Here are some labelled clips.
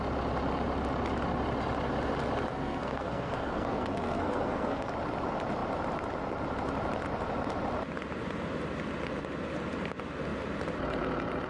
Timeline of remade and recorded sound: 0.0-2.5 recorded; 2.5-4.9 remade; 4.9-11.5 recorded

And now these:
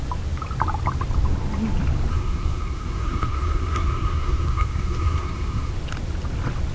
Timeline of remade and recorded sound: 0.0-2.1 recorded; 2.1-5.7 remade; 5.7-6.7 recorded

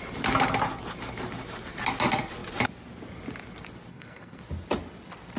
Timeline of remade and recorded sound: 0.0-3.9 recorded; 3.9-4.4 remade; 4.4-5.4 recorded

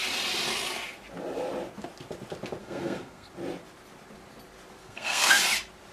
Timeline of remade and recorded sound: 0.0-2.6 recorded; 2.6-3.3 remade; 3.3-4.8 recorded; 4.8-5.4 remade; 5.4-5.9 recorded

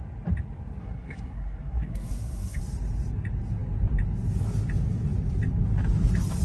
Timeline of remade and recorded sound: 0.0-0.8 recorded; 0.8-2.6 remade; 2.6-6.4 recorded